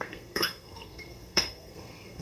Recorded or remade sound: remade